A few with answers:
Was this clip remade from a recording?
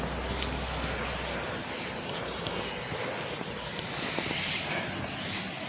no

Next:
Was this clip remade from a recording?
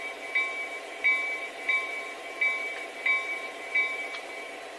yes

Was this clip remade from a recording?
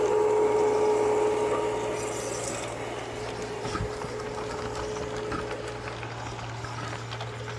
no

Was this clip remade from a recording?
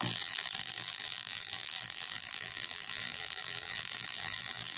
yes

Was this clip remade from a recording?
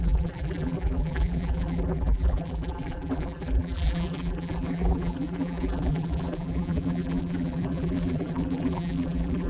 yes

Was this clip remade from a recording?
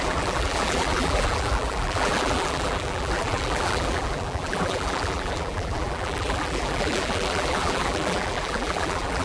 yes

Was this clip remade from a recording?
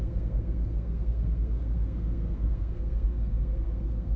yes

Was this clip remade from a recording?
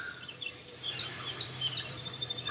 yes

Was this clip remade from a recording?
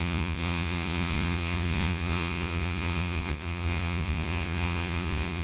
yes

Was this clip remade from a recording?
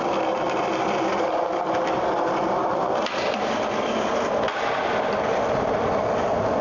no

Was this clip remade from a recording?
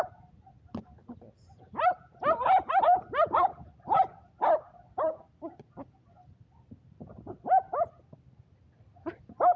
no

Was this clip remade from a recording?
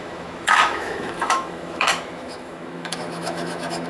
yes